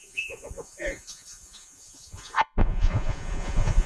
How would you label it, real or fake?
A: fake